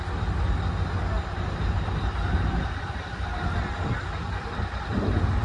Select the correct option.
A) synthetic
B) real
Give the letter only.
B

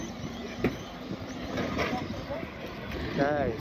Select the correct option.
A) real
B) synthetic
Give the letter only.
A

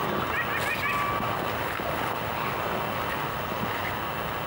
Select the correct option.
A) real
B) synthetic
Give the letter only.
A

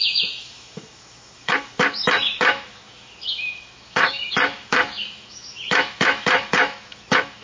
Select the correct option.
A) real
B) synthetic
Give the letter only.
B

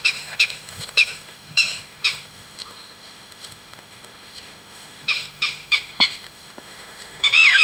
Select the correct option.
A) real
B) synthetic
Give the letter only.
B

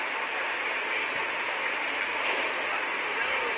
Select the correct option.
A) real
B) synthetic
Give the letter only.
A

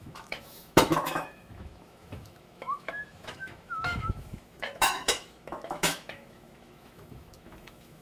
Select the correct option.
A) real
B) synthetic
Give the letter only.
B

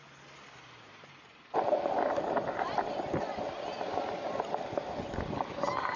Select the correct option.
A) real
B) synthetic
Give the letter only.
A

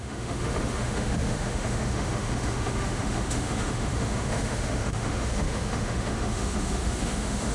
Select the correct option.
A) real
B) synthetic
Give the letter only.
B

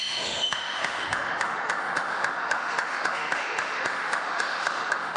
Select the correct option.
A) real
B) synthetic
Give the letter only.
B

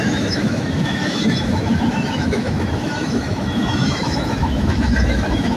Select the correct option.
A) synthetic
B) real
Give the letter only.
A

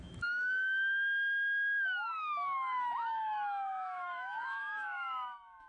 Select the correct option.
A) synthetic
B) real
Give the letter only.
A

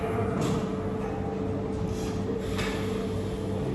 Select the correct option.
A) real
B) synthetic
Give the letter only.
A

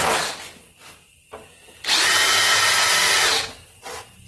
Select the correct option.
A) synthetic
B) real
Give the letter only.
B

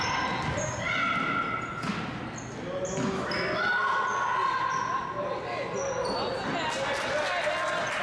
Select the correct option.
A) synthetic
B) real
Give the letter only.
B